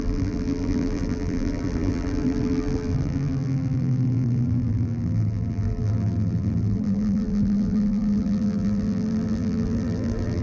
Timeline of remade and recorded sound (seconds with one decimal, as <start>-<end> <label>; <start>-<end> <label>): 0.0-10.4 remade